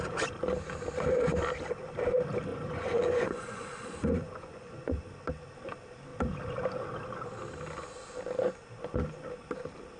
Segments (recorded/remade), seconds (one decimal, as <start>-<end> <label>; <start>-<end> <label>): 0.0-2.5 recorded; 2.5-5.0 remade; 5.0-10.0 recorded